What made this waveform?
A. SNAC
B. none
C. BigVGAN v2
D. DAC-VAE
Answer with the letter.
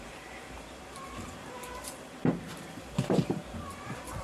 C